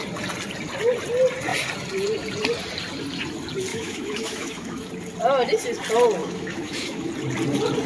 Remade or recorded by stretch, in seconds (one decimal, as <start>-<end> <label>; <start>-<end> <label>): 0.0-3.7 recorded; 3.7-4.9 remade; 4.9-6.2 recorded; 6.2-7.1 remade; 7.1-7.9 recorded